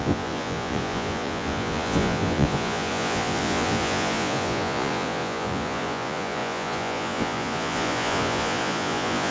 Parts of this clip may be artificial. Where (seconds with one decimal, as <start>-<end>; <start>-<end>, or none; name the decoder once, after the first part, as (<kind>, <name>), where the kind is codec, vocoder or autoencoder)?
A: 0.0-9.3 (vocoder, Vocos)

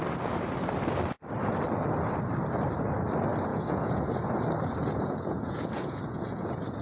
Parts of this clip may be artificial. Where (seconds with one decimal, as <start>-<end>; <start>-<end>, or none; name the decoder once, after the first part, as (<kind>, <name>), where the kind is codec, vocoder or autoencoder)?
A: 3.5-4.0 (vocoder, Vocos); 4.8-6.8

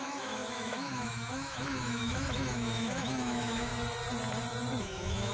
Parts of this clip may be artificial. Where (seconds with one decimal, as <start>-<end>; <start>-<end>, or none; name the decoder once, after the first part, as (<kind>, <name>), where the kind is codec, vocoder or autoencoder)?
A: 0.0-3.7 (autoencoder, DAC-VAE); 4.8-5.3